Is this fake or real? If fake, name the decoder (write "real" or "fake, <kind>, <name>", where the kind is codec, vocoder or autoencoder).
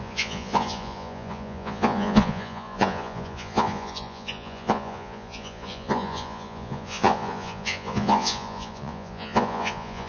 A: fake, vocoder, Vocos